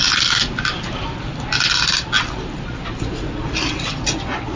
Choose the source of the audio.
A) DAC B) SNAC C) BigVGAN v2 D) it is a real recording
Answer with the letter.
D